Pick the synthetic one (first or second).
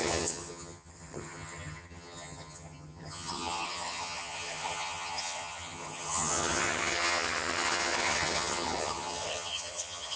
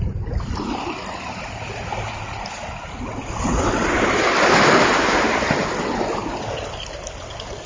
first